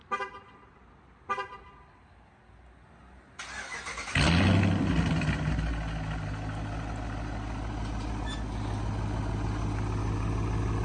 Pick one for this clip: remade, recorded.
recorded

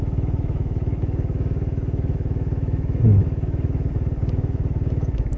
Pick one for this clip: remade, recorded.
remade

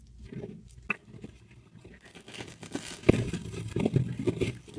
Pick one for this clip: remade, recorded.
recorded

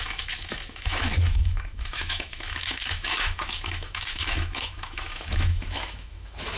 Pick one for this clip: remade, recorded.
remade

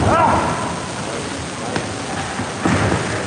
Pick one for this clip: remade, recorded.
recorded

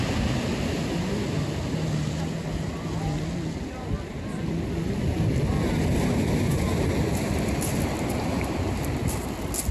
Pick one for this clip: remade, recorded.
recorded